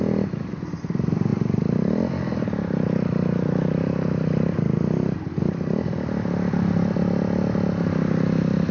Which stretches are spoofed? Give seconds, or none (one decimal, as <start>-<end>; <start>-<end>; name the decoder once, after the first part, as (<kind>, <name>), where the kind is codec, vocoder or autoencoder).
none